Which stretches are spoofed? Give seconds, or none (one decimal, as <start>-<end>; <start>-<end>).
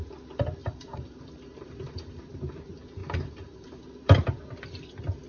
0.6-2.2; 3.0-3.8